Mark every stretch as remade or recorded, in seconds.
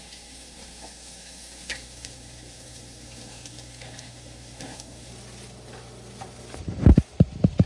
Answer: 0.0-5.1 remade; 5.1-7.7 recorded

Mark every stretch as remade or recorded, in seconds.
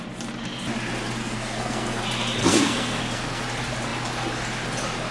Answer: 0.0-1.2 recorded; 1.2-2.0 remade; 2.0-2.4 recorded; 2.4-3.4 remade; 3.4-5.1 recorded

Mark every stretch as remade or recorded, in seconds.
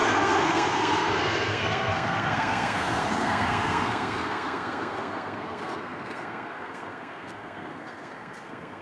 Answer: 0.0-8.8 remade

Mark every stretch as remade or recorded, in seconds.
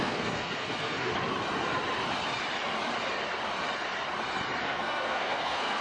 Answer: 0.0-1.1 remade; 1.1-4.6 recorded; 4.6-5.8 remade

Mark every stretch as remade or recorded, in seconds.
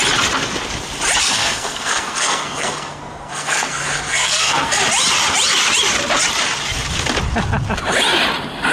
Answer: 0.0-1.2 recorded; 1.2-4.8 remade; 4.8-8.7 recorded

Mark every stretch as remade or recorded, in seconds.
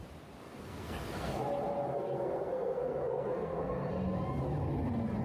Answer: 0.0-0.4 recorded; 0.4-1.4 remade; 1.4-1.9 recorded; 1.9-3.9 remade; 3.9-5.2 recorded